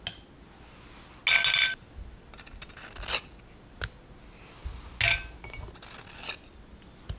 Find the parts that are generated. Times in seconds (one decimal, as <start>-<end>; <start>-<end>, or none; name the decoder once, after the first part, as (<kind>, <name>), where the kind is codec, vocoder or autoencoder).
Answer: none